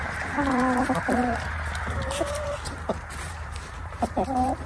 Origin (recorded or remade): remade